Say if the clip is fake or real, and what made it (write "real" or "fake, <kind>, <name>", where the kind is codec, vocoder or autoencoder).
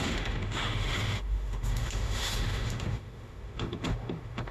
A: fake, autoencoder, DAC-VAE